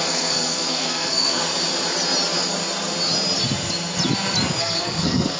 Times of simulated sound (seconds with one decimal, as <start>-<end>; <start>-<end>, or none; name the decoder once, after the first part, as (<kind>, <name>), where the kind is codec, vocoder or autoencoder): 0.0-1.4 (codec, SNAC); 4.6-5.4